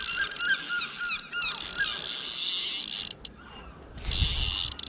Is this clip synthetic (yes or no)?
no